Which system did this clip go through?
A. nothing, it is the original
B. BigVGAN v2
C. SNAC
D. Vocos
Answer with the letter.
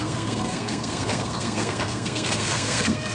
C